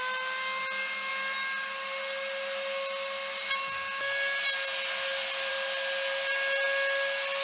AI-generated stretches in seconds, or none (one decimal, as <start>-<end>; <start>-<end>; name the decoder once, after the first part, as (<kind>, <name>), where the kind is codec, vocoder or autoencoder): none